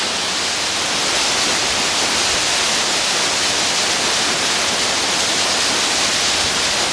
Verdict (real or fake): real